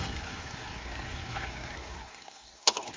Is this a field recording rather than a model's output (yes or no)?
no